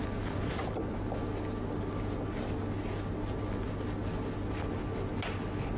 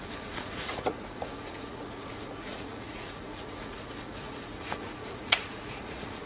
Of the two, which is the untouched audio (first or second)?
first